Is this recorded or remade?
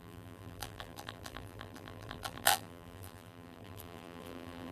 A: remade